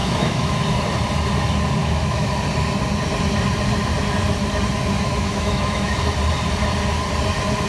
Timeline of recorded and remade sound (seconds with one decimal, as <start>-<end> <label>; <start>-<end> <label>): 0.0-0.6 remade; 0.6-1.8 recorded; 1.8-2.3 remade; 2.3-5.1 recorded; 5.1-6.0 remade; 6.0-7.7 recorded